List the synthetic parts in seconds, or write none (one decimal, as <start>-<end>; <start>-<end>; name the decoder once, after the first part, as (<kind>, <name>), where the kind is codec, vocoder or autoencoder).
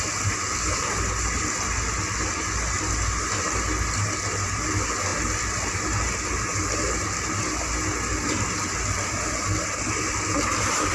none